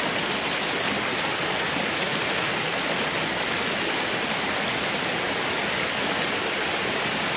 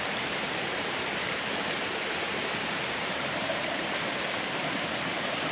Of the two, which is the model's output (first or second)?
second